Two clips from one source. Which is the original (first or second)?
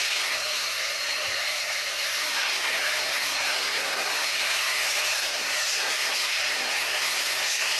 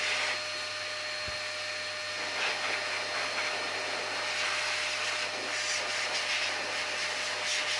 second